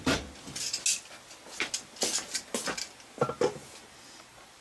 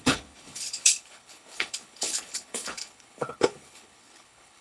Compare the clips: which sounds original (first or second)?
first